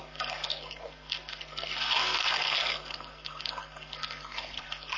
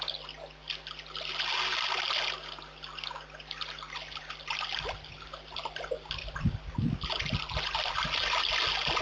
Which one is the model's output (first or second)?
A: first